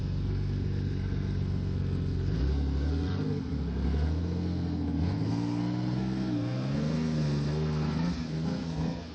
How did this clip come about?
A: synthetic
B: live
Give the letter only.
A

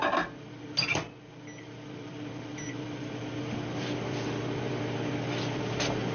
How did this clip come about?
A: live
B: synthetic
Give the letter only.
A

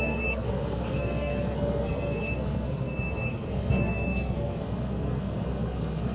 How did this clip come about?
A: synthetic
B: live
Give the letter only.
A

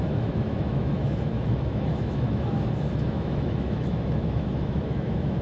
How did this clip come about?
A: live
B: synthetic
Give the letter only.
B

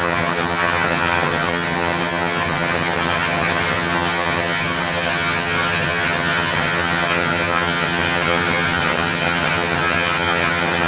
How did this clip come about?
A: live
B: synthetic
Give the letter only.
B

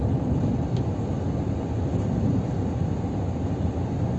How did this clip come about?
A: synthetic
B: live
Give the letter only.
B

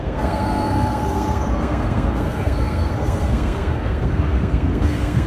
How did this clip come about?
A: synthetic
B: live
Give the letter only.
A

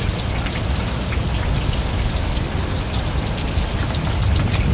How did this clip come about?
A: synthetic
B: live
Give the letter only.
B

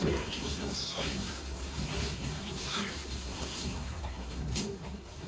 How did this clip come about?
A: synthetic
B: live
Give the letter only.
A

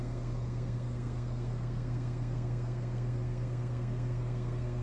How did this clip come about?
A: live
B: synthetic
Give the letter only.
B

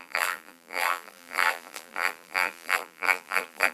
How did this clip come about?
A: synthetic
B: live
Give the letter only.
A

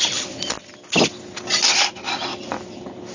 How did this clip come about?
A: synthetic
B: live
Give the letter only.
B